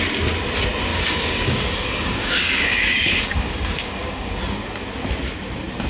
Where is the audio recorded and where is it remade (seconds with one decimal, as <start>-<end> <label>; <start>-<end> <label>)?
0.0-0.9 recorded; 0.9-4.4 remade; 4.4-5.9 recorded

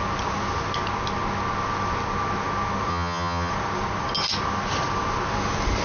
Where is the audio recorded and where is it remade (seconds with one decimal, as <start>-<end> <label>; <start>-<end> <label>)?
0.0-2.9 recorded; 2.9-3.5 remade; 3.5-5.8 recorded